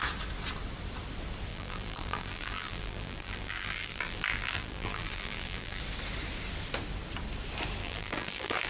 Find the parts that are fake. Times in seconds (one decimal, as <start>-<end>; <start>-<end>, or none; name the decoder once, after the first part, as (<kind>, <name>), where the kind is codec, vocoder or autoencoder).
1.5-5.8 (vocoder, BigVGAN v2); 7.8-8.7